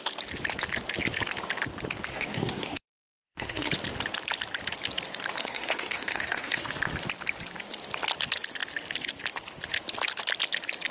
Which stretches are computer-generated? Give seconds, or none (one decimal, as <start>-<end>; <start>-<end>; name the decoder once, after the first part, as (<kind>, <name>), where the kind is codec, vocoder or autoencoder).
2.1-3.7 (codec, SNAC); 5.4-6.7